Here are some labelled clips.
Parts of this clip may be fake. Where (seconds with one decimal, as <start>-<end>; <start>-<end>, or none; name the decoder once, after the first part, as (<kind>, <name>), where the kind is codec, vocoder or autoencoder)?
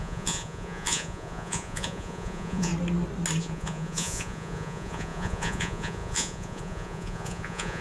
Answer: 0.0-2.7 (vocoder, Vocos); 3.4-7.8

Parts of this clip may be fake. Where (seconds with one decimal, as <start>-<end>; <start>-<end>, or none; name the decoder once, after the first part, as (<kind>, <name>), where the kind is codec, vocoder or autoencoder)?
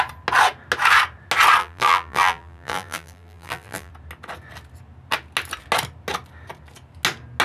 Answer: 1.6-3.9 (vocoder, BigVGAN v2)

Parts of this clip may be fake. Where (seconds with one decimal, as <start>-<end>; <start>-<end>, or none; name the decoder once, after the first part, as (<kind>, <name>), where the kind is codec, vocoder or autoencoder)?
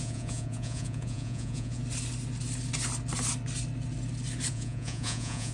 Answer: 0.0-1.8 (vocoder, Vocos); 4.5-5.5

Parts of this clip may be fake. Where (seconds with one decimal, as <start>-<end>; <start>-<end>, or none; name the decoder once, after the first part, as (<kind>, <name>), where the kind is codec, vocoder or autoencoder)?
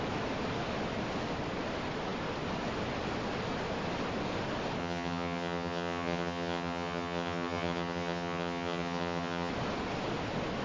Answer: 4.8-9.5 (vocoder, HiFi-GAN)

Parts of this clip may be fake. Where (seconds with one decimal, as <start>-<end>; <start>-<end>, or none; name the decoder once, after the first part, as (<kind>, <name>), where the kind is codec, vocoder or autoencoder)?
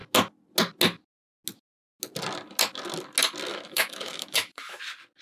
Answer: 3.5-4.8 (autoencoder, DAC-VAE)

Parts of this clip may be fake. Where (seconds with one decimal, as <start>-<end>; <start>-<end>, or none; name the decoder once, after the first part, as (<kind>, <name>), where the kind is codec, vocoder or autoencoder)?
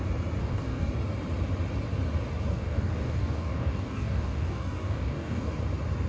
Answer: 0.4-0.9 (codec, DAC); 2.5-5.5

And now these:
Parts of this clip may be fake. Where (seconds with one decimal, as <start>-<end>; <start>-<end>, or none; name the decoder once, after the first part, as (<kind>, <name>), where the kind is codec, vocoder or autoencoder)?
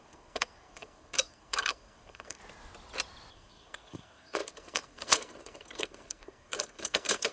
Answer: 0.0-2.4 (codec, SNAC); 3.3-7.3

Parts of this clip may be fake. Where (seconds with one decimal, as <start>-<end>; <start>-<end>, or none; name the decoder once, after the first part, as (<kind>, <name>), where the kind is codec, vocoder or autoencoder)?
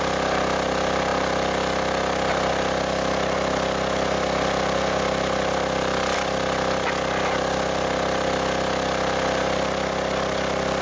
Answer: none